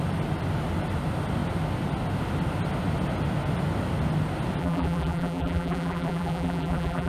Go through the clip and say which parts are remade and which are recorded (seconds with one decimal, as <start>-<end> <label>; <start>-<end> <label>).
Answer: 0.0-4.6 recorded; 4.6-7.1 remade